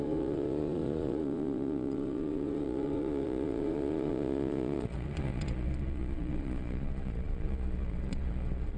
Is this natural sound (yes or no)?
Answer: no